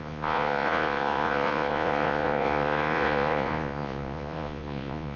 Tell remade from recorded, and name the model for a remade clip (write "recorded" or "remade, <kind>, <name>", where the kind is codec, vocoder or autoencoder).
remade, vocoder, Vocos